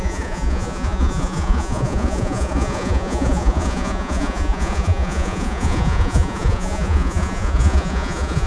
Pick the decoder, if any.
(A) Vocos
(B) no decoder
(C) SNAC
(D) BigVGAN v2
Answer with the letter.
A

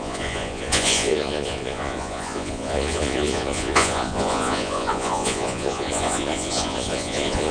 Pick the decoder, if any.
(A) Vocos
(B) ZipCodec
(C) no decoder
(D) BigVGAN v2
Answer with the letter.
A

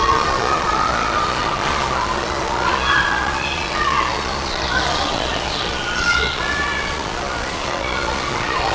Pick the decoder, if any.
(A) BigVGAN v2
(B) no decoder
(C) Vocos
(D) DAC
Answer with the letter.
C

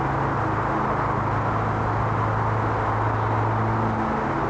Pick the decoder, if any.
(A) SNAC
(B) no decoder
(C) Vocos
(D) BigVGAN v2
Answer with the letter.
B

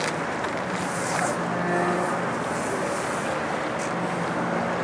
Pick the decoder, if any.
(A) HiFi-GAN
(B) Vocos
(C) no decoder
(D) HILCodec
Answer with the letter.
C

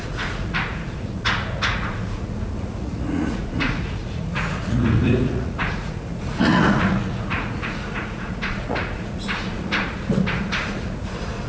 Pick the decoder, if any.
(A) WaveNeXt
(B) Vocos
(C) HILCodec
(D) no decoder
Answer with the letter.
B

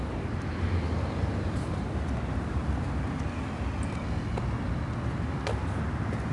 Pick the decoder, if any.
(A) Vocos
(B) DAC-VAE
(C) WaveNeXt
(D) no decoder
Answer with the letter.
D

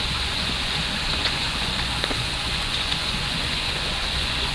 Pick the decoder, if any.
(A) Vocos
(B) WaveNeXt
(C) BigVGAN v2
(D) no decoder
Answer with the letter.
A